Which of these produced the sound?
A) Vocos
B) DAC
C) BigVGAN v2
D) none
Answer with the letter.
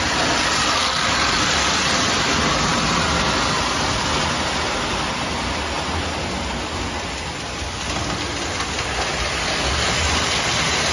D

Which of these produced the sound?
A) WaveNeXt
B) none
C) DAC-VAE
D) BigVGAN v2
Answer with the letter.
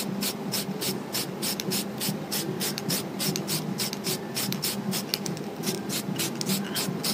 B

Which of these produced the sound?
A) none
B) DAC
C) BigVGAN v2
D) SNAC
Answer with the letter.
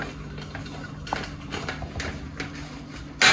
A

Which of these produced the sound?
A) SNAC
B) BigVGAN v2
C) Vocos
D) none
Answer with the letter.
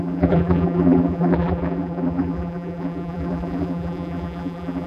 B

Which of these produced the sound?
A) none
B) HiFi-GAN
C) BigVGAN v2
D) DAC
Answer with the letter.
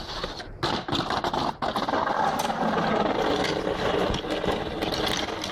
A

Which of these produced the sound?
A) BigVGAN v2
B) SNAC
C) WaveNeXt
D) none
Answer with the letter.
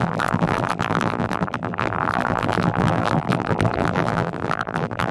A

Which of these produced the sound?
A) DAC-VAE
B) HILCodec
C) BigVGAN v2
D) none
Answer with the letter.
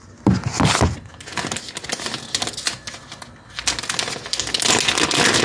D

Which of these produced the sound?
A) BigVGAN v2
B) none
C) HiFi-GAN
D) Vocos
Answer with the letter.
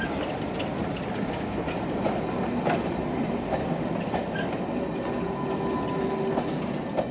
B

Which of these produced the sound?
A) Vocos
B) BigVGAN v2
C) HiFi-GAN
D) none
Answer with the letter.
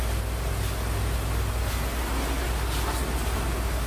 D